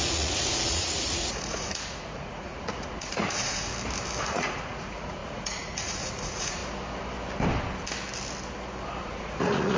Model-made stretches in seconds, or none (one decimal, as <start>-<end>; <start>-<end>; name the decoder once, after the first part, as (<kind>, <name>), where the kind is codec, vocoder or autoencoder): 0.0-3.7 (vocoder, Vocos); 4.2-6.6; 9.0-9.8